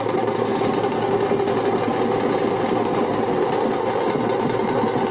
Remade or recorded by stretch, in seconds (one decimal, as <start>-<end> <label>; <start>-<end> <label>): 0.0-5.1 recorded